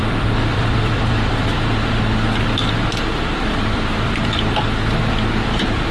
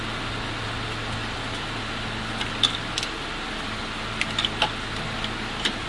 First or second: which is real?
second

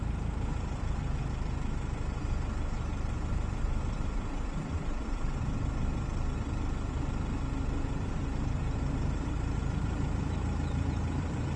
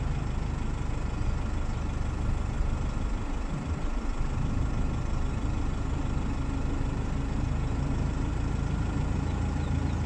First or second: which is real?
second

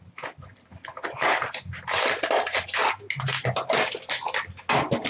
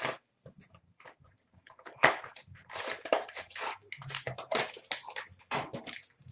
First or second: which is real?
first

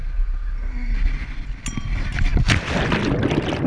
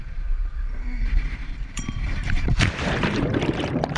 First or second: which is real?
first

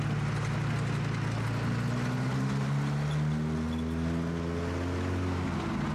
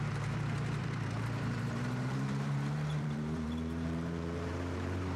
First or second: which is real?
first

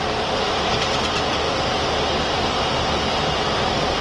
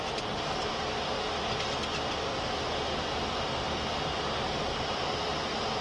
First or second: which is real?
second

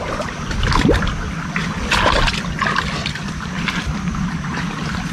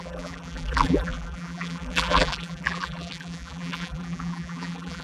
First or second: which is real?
first